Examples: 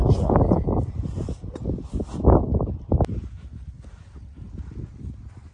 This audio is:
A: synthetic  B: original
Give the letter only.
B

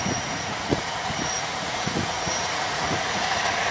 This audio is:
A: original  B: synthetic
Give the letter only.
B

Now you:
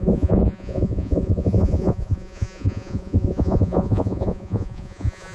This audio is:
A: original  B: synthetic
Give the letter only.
B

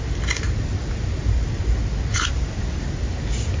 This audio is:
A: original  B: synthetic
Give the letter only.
A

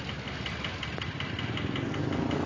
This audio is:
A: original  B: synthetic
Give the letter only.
A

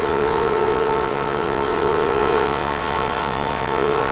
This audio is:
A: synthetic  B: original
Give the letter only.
A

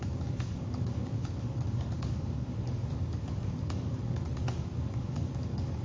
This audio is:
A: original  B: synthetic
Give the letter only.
B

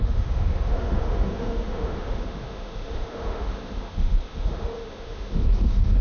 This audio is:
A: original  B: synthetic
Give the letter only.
B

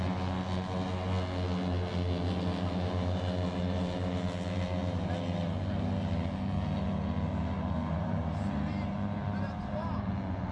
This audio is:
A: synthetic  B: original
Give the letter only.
B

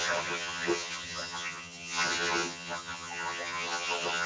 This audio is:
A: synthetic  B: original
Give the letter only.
A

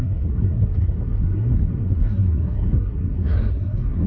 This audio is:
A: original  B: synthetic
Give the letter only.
B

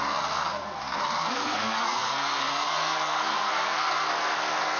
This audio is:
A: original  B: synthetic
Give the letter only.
B